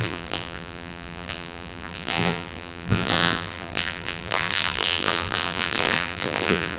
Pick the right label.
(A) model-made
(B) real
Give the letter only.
A